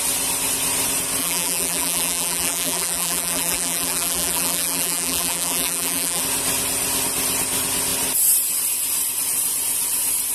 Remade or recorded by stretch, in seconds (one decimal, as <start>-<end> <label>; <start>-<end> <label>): 0.0-1.2 recorded; 1.2-6.2 remade; 6.2-10.3 recorded